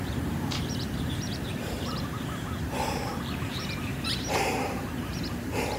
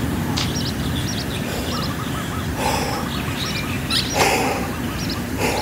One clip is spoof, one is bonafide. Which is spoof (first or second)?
first